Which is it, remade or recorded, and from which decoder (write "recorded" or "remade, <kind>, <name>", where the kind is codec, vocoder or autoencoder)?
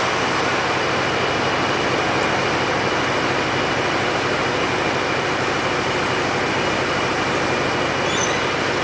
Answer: recorded